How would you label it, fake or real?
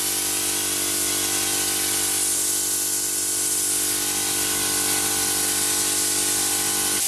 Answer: real